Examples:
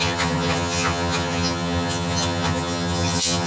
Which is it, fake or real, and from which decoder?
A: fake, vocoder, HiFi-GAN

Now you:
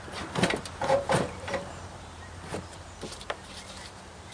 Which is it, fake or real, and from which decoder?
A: fake, vocoder, BigVGAN v2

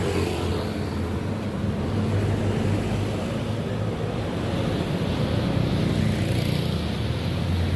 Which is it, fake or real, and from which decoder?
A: real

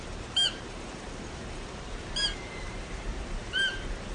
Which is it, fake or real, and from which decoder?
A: fake, vocoder, BigVGAN v2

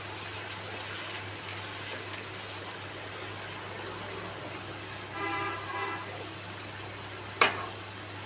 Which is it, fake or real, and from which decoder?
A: real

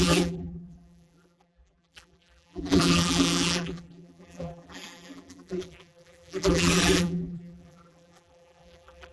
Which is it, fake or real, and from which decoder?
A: fake, vocoder, BigVGAN v2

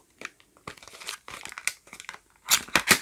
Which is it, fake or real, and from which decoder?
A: real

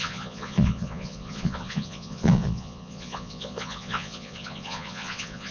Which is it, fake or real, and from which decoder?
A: fake, vocoder, Vocos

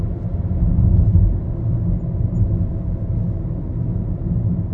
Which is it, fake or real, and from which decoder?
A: real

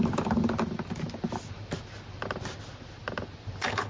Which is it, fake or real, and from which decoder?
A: real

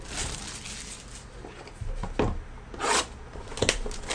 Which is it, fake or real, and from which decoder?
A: real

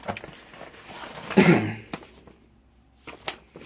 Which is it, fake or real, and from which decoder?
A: real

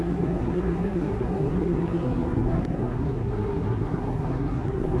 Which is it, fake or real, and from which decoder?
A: fake, codec, SNAC